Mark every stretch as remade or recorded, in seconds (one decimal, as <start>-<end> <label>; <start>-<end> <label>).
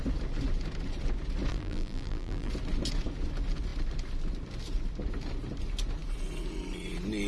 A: 0.0-1.5 recorded; 1.5-2.5 remade; 2.5-7.3 recorded